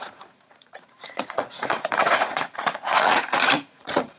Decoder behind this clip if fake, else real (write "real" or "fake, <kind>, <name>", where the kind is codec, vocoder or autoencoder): fake, vocoder, Vocos